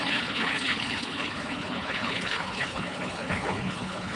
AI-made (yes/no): yes